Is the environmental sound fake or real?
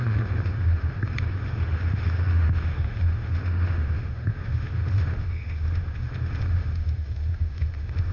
fake